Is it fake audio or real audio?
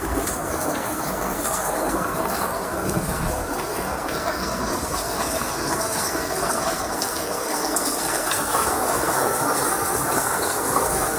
fake